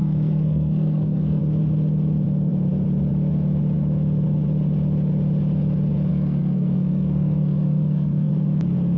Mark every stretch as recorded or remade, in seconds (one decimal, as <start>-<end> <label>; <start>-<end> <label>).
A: 0.0-1.4 remade; 1.4-6.1 recorded; 6.1-8.3 remade; 8.3-9.0 recorded